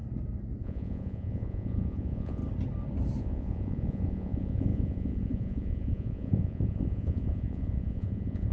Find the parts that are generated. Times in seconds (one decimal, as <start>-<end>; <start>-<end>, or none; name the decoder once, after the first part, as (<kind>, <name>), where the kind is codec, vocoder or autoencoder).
0.6-2.4 (vocoder, Vocos); 3.2-8.5